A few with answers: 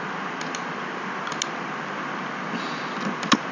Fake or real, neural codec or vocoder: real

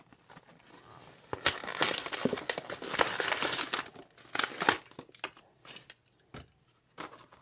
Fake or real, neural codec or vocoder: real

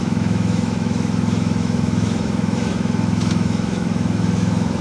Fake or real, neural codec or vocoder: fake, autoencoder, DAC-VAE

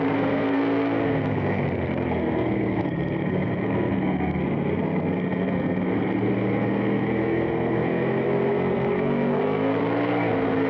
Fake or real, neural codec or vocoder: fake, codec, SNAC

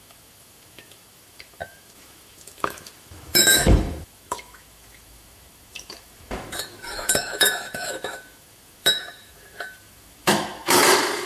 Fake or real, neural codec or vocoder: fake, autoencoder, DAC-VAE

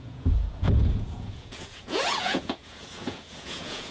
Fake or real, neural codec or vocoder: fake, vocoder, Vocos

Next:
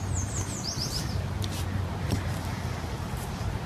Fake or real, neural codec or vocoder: fake, vocoder, BigVGAN v2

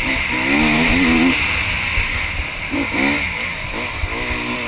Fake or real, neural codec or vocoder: real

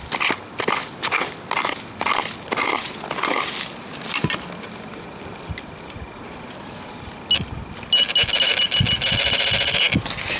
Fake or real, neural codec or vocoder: real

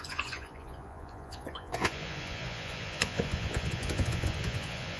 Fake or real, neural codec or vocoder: fake, vocoder, Vocos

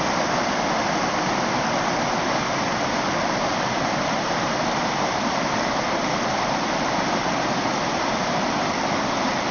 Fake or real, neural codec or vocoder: real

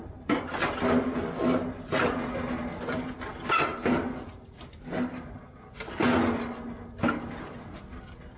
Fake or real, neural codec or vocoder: real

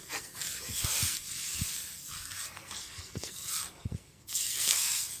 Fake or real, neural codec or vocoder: fake, codec, SNAC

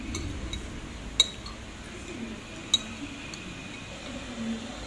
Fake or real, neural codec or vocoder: real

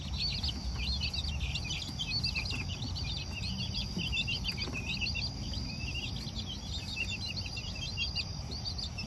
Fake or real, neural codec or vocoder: real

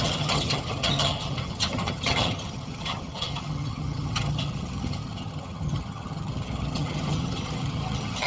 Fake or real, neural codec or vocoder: fake, vocoder, HiFi-GAN